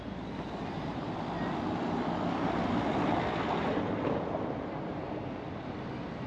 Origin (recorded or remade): recorded